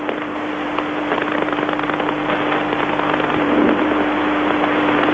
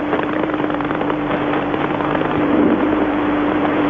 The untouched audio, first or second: first